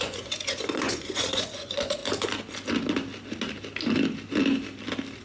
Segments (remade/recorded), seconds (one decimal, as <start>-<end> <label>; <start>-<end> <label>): 0.0-2.0 remade; 2.0-5.2 recorded